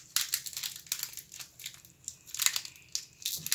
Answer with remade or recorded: recorded